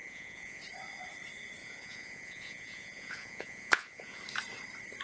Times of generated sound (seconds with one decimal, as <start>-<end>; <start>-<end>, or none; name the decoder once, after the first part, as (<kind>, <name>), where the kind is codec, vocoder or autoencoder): 0.0-0.6 (vocoder, Vocos); 1.6-4.2